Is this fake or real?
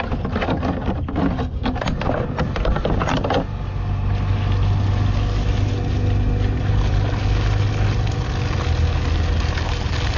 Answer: real